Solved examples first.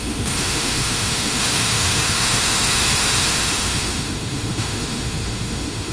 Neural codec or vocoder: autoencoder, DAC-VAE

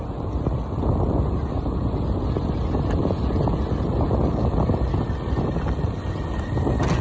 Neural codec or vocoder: none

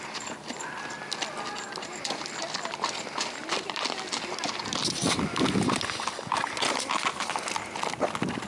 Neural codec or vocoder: none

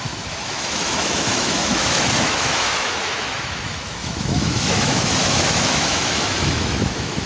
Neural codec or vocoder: autoencoder, DAC-VAE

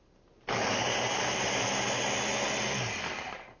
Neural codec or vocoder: none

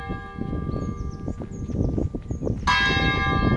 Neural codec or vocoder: none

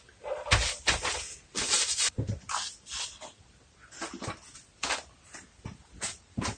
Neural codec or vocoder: none